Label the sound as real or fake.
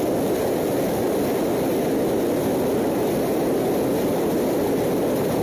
real